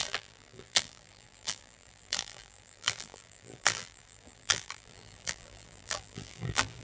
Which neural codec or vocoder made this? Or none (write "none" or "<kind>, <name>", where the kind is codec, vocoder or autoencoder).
vocoder, BigVGAN v2